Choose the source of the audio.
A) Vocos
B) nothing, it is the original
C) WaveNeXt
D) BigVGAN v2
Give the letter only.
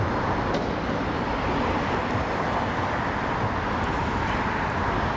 B